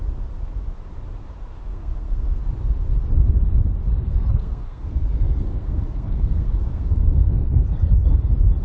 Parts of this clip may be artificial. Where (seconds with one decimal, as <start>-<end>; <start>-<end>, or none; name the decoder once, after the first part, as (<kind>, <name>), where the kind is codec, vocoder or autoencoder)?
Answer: 1.7-2.4 (codec, SNAC); 3.9-8.1